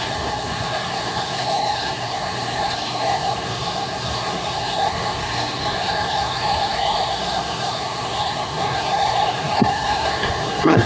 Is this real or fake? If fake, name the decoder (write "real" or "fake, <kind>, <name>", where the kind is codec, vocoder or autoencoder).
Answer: fake, codec, SNAC